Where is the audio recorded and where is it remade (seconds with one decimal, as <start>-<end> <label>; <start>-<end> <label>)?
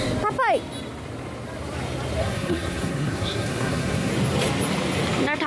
0.0-2.2 recorded; 2.2-4.1 remade; 4.1-5.5 recorded